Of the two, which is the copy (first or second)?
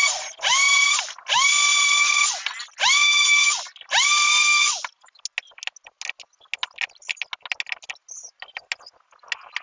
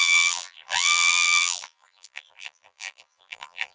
second